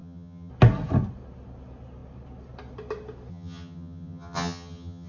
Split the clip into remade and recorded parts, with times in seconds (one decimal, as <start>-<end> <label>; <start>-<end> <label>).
0.0-0.5 remade; 0.5-3.3 recorded; 3.3-5.1 remade